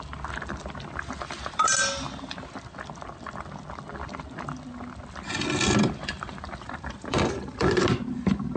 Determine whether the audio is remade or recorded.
recorded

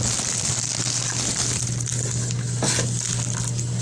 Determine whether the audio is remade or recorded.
recorded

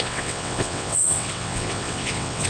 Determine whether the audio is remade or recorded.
remade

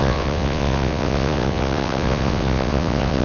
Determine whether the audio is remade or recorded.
remade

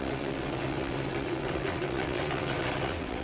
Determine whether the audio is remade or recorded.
remade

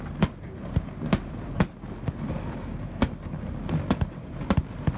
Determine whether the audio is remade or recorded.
recorded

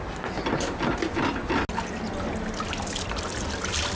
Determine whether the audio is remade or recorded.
recorded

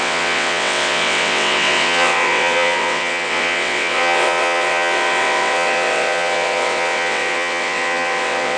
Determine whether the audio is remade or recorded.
remade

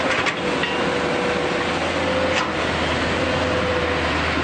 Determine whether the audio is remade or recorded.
recorded